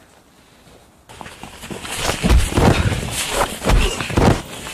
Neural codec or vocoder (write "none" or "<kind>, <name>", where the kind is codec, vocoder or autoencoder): none